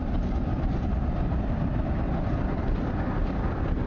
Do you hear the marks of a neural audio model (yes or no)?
no